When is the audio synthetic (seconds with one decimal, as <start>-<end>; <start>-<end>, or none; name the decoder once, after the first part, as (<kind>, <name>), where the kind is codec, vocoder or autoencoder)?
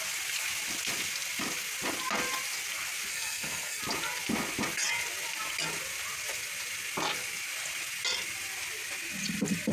3.1-3.8 (codec, SNAC)